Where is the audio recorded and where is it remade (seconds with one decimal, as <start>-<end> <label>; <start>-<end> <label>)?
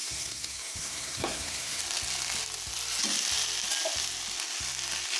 0.0-1.8 remade; 1.8-5.2 recorded